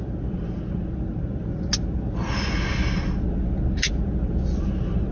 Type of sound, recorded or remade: recorded